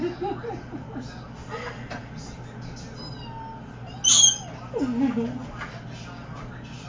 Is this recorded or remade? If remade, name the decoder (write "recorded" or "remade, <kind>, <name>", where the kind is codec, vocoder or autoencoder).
recorded